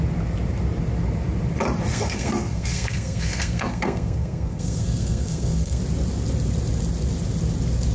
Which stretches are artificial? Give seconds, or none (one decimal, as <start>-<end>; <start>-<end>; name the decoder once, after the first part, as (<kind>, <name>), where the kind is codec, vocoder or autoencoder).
1.9-5.8 (codec, SNAC)